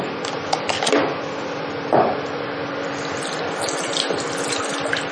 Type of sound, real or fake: real